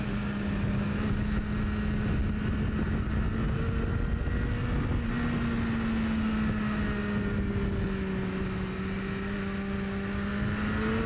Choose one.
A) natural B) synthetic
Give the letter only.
A